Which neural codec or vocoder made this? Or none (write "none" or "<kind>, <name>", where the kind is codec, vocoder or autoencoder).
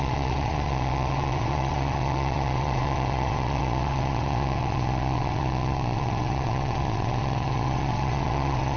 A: vocoder, WaveNeXt